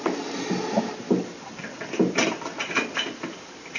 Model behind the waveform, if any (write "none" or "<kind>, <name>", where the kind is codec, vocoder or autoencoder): none